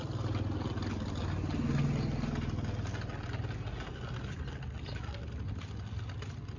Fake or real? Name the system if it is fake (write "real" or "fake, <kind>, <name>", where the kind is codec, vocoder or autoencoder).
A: real